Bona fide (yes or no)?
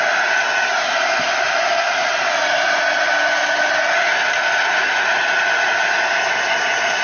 yes